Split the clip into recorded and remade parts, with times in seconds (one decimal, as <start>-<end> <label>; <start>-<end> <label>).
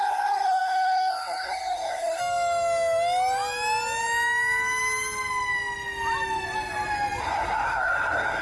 0.0-2.2 remade; 2.2-7.2 recorded; 7.2-8.4 remade